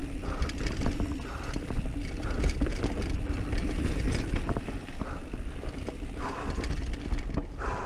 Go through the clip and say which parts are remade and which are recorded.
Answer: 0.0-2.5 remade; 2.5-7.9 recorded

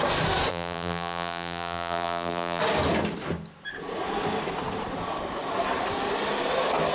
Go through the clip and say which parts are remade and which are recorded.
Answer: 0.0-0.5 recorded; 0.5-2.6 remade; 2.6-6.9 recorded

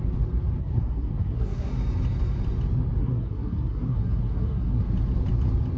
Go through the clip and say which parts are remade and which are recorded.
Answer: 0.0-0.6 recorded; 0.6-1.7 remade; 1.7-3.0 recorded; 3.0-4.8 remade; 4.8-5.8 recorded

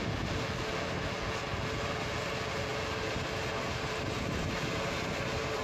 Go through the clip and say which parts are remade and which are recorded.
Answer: 0.0-5.6 recorded

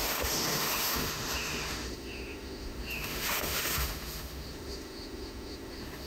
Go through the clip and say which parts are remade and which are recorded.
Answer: 0.0-6.1 remade

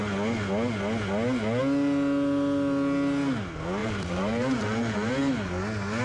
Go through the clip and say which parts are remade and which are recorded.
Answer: 0.0-3.8 recorded; 3.8-5.1 remade; 5.1-6.0 recorded

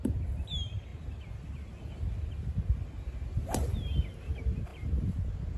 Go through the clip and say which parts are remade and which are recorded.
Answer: 0.0-5.6 recorded

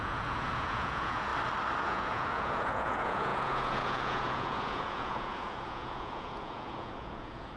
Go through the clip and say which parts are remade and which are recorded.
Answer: 0.0-1.3 remade; 1.3-1.8 recorded; 1.8-7.6 remade